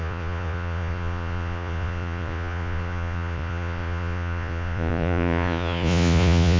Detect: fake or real fake